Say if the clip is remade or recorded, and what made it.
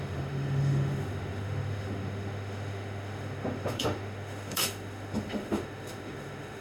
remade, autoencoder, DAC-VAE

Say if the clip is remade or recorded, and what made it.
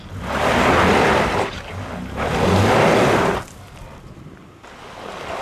recorded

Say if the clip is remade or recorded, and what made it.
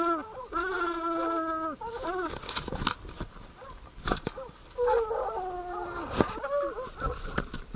recorded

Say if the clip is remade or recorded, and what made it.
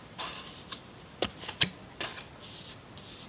recorded